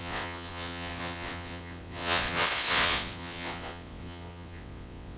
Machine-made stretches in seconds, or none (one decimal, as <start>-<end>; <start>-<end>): 0.0-5.2